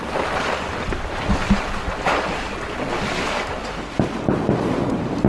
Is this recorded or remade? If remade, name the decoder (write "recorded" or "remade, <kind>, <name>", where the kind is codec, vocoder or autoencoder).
recorded